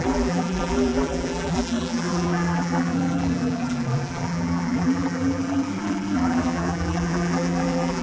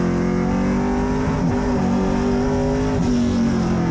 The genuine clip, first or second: second